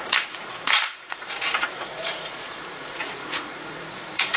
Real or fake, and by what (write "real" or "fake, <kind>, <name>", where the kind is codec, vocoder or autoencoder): fake, vocoder, Vocos